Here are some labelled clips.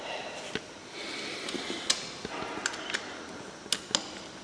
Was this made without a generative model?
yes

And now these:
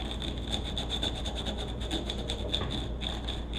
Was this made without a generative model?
yes